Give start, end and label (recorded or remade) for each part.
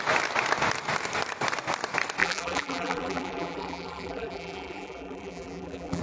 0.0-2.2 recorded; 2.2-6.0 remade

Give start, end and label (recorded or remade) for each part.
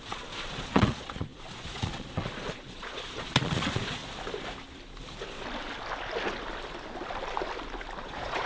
0.0-4.0 remade; 4.0-8.0 recorded; 8.0-8.5 remade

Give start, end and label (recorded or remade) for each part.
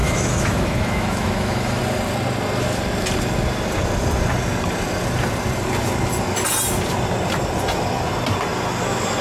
0.0-1.8 remade; 1.8-9.2 recorded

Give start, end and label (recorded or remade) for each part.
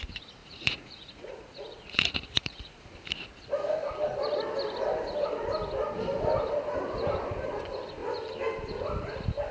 0.0-0.4 recorded; 0.4-2.9 remade; 2.9-9.5 recorded